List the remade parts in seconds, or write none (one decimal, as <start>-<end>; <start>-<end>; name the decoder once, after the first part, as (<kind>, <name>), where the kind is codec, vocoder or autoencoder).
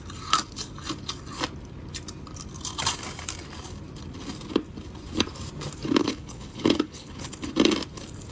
6.0-7.2 (codec, HILCodec)